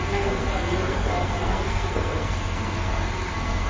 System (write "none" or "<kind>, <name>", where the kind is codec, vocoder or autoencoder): codec, SNAC